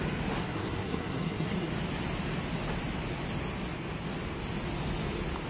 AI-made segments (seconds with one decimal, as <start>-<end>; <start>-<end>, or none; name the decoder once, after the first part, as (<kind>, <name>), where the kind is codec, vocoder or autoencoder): 0.4-1.7 (codec, SNAC)